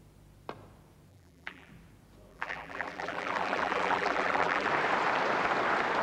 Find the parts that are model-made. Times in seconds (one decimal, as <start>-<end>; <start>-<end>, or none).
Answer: 1.1-1.7; 2.3-4.7